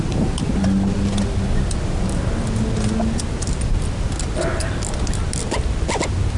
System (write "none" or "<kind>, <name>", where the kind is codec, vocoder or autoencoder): none